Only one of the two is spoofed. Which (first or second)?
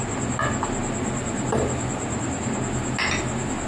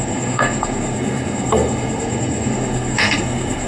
second